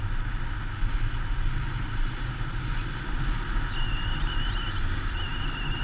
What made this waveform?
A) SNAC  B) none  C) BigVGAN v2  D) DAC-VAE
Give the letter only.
B